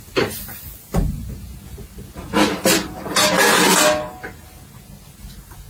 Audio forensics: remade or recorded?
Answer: recorded